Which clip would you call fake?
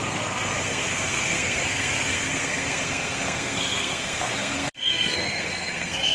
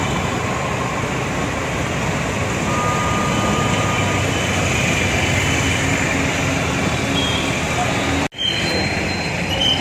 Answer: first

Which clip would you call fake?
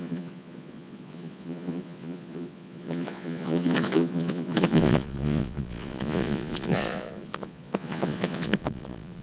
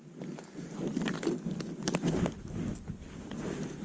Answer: first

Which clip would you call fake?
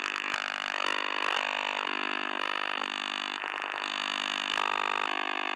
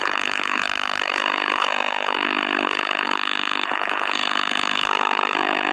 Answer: second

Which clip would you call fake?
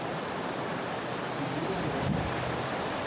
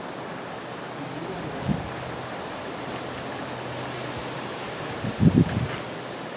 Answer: first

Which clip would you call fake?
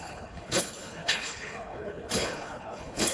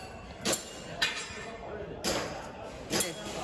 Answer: first